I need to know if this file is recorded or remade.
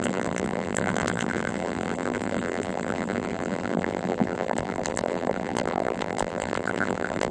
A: remade